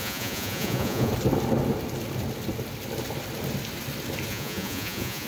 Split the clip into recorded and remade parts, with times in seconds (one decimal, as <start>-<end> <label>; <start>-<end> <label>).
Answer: 0.0-1.1 remade; 1.1-4.3 recorded; 4.3-5.3 remade